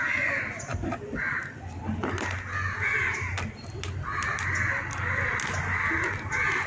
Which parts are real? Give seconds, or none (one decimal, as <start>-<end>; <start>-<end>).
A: 0.0-3.0; 6.3-6.7